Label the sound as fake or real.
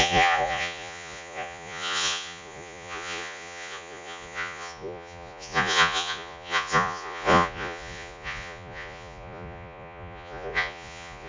fake